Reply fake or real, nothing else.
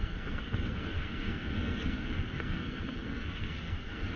fake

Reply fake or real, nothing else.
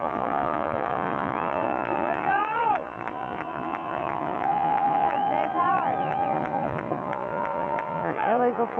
fake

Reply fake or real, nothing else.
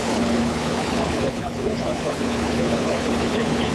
fake